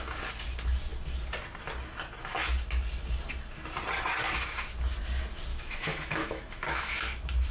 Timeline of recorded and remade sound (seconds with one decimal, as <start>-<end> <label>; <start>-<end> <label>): 0.0-5.5 recorded; 5.5-7.0 remade; 7.0-7.5 recorded